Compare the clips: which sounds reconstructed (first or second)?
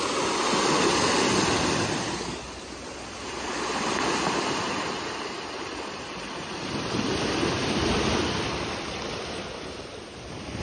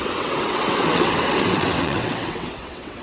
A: second